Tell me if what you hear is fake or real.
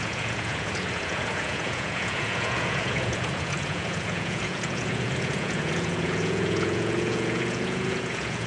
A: fake